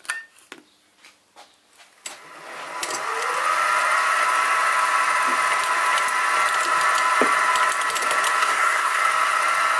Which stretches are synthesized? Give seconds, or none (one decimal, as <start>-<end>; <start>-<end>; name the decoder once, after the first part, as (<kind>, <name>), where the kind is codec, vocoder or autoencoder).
8.4-9.0 (codec, SNAC)